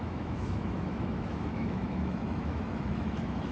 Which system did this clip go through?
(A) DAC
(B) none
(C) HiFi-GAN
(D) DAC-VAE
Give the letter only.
D